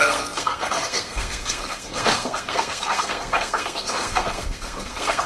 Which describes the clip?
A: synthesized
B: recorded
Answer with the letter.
A